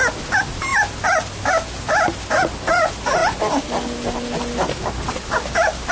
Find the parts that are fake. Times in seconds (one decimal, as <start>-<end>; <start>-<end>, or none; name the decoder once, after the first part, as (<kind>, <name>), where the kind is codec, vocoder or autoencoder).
none